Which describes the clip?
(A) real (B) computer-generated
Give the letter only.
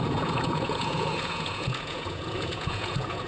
B